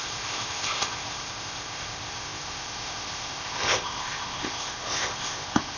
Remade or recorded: remade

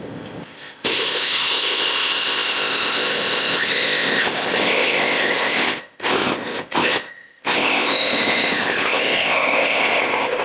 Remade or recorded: remade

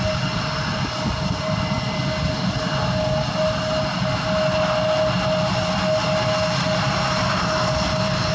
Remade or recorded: recorded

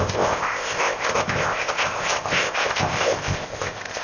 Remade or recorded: remade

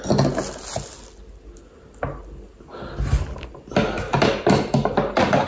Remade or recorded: recorded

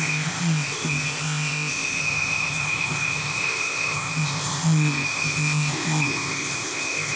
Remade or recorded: remade